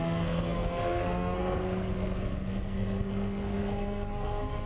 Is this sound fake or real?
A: fake